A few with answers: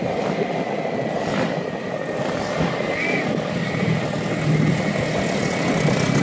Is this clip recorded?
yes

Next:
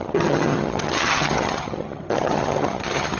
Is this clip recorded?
no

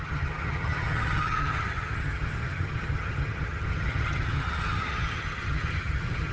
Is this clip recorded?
no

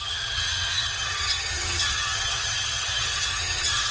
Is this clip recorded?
no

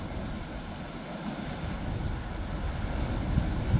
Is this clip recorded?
yes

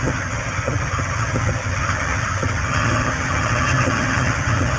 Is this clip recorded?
no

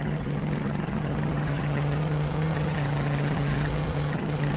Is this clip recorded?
no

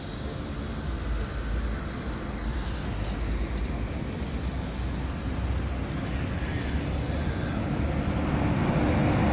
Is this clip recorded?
yes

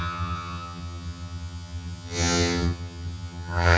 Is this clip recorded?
no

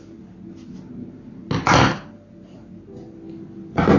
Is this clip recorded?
yes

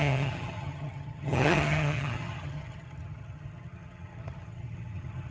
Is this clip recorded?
no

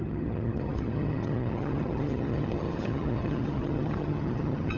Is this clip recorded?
no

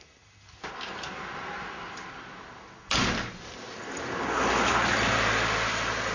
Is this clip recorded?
yes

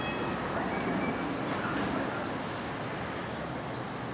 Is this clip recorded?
yes